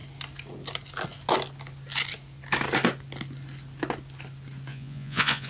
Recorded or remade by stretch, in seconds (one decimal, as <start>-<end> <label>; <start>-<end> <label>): 0.0-4.7 recorded; 4.7-5.5 remade